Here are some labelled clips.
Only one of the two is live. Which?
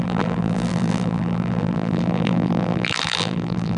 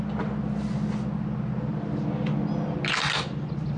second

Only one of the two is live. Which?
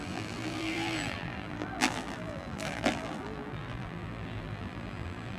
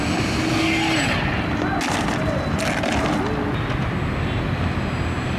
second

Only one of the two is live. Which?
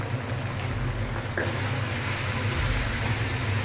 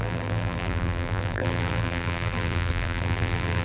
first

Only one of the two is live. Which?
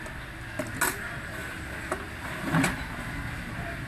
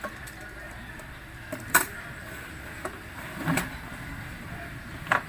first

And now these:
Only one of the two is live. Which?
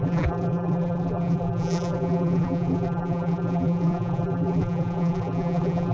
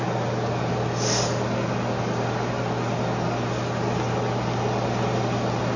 second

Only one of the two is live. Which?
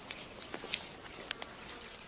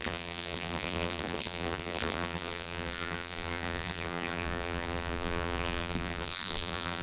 first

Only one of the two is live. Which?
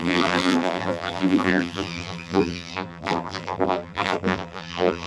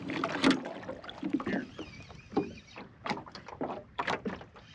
second